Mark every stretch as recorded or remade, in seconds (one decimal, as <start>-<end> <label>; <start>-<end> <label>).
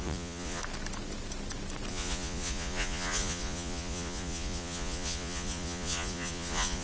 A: 0.0-0.6 remade; 0.6-1.9 recorded; 1.9-6.8 remade